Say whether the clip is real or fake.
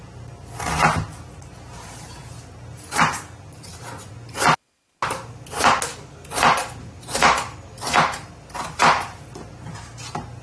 real